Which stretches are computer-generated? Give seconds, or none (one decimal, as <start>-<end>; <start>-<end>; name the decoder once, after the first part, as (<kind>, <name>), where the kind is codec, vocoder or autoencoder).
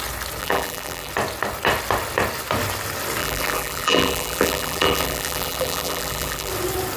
0.4-1.1 (vocoder, BigVGAN v2); 3.2-6.5